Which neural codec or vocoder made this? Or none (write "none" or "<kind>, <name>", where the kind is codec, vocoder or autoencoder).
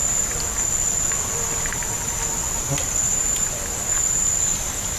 none